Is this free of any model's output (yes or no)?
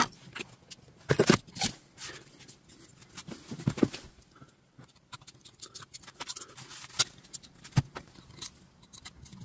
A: yes